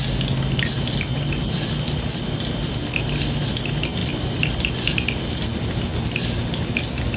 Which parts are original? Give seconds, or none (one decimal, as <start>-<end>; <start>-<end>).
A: 0.0-7.2